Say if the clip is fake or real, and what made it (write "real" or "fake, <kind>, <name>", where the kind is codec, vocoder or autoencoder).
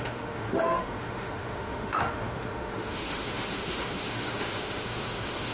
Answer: fake, autoencoder, DAC-VAE